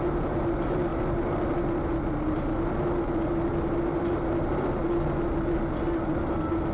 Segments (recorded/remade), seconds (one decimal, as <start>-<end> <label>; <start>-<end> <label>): 0.0-6.7 recorded